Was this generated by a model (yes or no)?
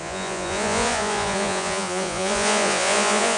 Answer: yes